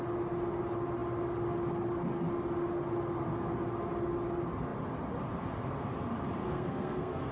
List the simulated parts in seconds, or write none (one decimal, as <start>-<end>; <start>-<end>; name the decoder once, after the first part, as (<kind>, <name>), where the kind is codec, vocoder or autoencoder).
6.4-7.3 (codec, SNAC)